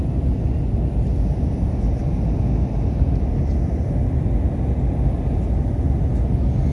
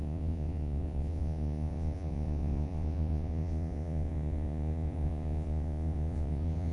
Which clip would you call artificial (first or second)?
second